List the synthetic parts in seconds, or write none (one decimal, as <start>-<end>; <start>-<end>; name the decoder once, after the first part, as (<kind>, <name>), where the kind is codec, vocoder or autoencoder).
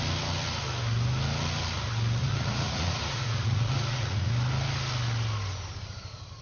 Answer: 2.2-4.3 (vocoder, Vocos)